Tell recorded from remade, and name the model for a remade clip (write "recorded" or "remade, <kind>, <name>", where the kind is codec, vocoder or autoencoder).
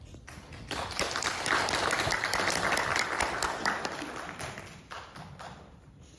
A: recorded